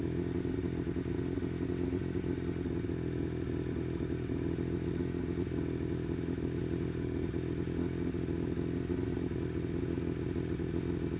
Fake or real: real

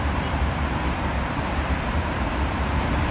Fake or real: fake